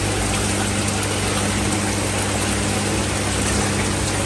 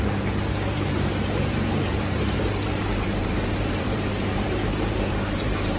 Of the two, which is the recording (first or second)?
first